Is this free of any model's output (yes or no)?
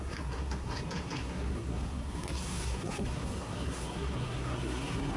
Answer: no